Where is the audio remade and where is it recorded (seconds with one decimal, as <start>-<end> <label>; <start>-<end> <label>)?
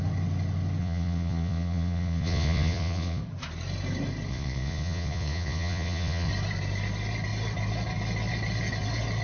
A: 0.0-0.8 recorded; 0.8-3.2 remade; 3.2-4.3 recorded; 4.3-6.3 remade; 6.3-9.2 recorded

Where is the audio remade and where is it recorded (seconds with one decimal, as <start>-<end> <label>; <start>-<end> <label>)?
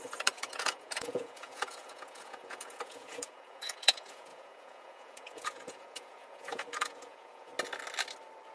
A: 0.0-7.5 remade; 7.5-8.5 recorded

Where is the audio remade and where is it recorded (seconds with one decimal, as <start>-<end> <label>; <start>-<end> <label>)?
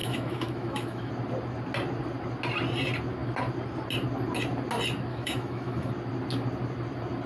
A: 0.0-1.1 remade; 1.1-5.1 recorded; 5.1-5.9 remade; 5.9-7.3 recorded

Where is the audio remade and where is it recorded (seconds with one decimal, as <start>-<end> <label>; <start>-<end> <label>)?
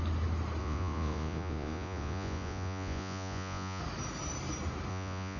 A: 0.0-0.6 recorded; 0.6-3.8 remade; 3.8-4.9 recorded; 4.9-5.4 remade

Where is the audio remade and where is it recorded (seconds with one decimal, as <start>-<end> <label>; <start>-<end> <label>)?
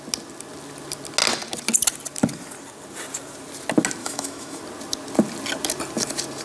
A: 0.0-4.0 recorded; 4.0-4.6 remade; 4.6-6.4 recorded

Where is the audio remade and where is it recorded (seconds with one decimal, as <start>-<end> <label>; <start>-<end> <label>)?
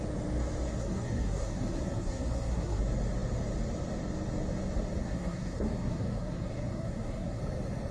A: 0.0-0.8 recorded; 0.8-2.8 remade; 2.8-5.0 recorded; 5.0-7.4 remade; 7.4-7.9 recorded